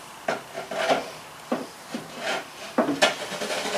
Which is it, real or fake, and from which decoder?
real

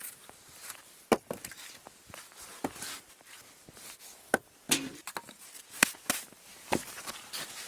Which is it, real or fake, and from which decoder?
real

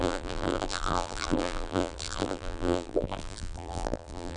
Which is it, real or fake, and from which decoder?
fake, vocoder, BigVGAN v2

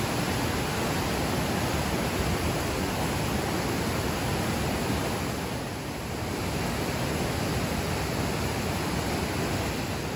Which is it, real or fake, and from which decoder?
real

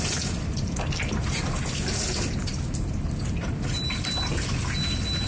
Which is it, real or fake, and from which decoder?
real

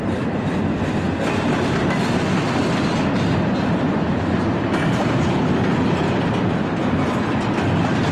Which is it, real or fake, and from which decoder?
real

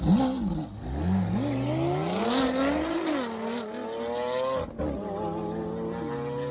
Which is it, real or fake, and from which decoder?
real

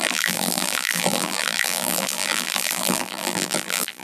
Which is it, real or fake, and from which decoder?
fake, vocoder, BigVGAN v2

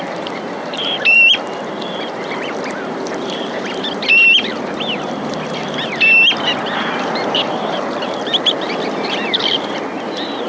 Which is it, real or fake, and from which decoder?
fake, vocoder, BigVGAN v2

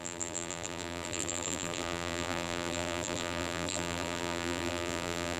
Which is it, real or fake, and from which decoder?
fake, vocoder, BigVGAN v2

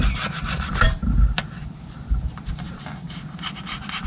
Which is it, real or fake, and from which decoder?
fake, vocoder, BigVGAN v2